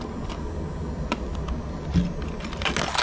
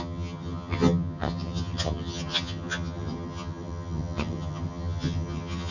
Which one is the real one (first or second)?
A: first